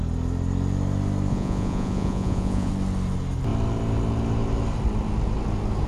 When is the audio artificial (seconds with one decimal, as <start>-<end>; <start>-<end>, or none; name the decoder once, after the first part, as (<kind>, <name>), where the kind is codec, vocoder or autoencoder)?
1.3-2.7 (vocoder, Vocos)